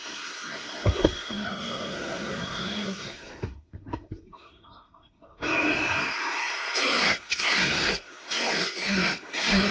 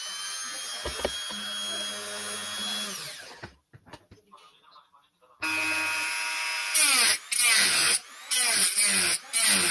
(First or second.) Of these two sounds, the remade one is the first